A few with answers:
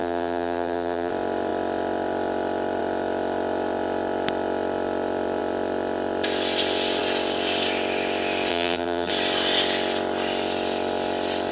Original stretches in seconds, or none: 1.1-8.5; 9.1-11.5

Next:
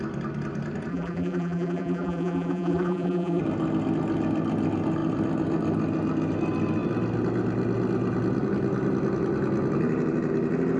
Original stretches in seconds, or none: 0.0-0.9; 3.4-10.8

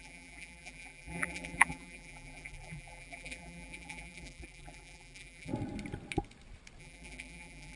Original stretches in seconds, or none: 5.5-6.8

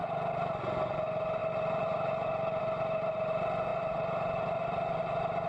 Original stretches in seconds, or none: 0.9-1.4; 2.6-3.7; 5.0-5.5

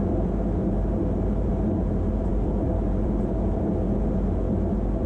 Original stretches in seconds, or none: 0.0-0.6; 1.5-2.3; 3.3-5.1

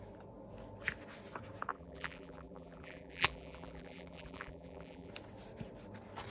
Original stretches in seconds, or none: 0.0-1.7; 5.1-6.3

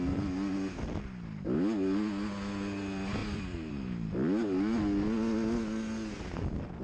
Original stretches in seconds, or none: 0.0-3.2; 3.7-6.8